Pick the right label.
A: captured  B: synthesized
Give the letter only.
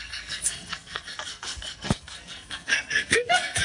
B